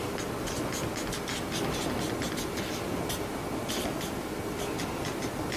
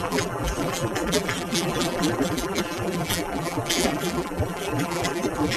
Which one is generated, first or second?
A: second